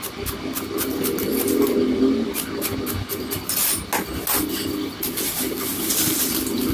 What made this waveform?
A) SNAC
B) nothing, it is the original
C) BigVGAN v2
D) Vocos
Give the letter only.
B